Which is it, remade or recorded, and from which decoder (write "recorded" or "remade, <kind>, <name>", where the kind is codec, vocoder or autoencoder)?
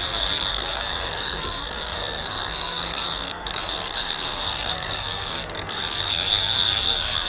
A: remade, codec, SNAC